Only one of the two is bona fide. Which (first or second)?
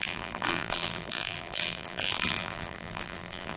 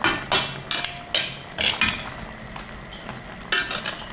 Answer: second